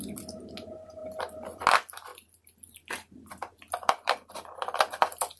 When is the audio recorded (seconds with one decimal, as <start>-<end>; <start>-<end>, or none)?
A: 0.0-1.0; 1.6-2.1